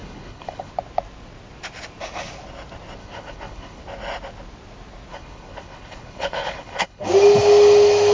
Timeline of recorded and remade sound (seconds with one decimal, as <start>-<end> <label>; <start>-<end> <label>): 0.0-0.7 remade; 0.7-3.0 recorded; 3.0-3.8 remade; 3.8-5.1 recorded; 5.1-7.1 remade; 7.1-8.1 recorded